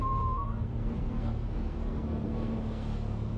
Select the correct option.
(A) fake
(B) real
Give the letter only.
A